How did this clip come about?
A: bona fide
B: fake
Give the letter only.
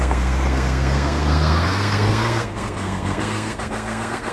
B